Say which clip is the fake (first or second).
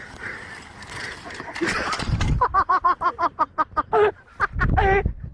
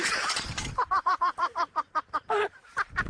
second